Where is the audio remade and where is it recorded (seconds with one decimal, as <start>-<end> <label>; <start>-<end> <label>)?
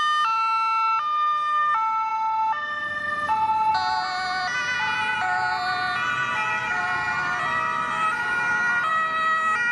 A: 0.0-9.7 recorded